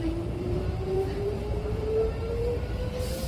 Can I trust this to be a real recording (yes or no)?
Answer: no